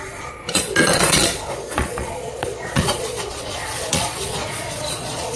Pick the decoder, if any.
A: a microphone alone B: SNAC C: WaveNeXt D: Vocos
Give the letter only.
D